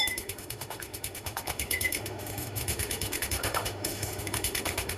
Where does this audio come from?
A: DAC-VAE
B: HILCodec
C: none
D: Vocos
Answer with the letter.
A